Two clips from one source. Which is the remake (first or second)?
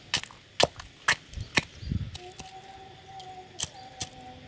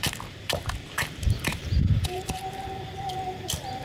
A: second